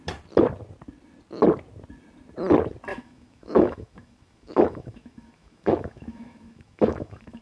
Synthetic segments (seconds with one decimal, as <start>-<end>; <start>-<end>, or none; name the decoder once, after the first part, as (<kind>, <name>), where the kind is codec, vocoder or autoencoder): 2.9-7.4 (autoencoder, DAC-VAE)